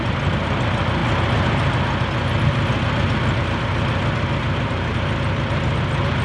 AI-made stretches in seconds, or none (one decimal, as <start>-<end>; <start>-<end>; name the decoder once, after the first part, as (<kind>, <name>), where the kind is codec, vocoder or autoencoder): none